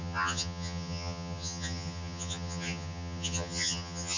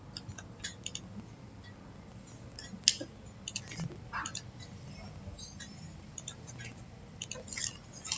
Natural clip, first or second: second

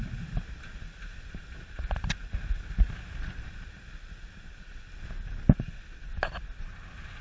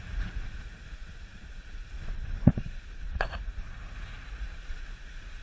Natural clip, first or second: first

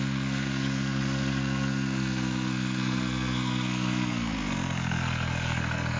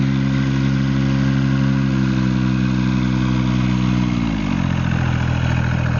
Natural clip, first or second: second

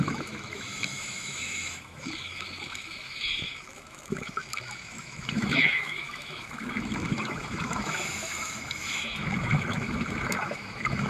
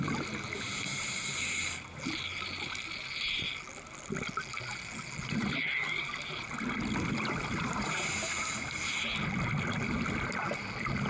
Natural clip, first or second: second